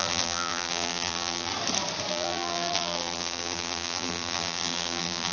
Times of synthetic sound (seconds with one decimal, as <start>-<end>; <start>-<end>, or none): 0.0-1.5; 2.1-5.3